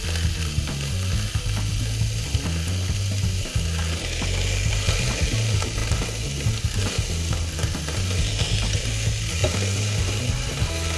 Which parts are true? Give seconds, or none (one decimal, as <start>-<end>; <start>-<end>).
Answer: 0.0-11.0